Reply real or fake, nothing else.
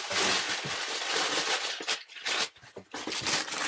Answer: real